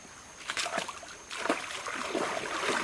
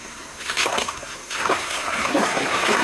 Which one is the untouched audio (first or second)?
first